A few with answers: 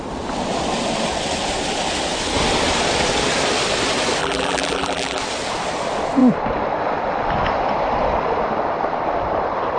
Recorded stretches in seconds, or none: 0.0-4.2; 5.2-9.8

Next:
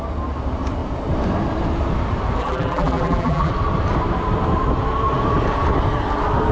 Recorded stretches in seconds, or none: 0.0-2.4; 3.5-6.5

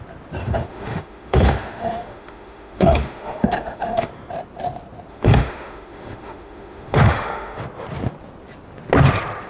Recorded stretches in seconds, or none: 0.0-0.4; 4.1-5.1; 7.6-9.5